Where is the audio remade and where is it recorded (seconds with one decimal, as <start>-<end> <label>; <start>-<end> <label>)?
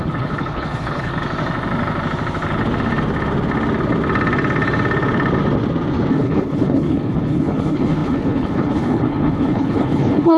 0.0-1.1 remade; 1.1-6.1 recorded; 6.1-10.4 remade